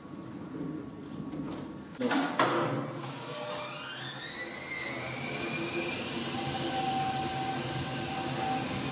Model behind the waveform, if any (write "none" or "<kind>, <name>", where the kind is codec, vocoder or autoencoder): none